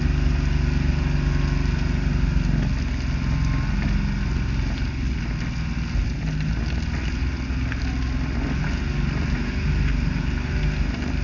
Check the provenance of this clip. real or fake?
real